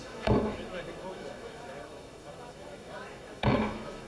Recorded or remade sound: remade